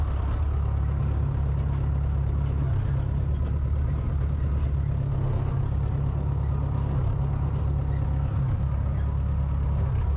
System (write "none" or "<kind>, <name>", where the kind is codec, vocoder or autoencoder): none